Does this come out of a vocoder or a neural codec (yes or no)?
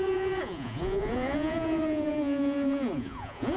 yes